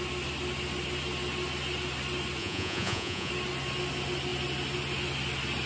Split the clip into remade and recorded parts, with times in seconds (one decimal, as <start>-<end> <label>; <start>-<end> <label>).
0.0-2.4 recorded; 2.4-3.3 remade; 3.3-5.7 recorded